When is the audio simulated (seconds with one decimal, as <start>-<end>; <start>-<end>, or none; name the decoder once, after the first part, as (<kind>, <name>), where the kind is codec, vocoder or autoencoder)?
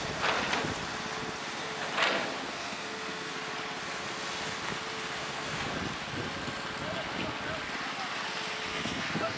2.4-3.3 (codec, SNAC); 5.2-5.7; 8.7-9.4